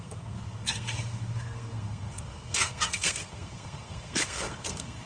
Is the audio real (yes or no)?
no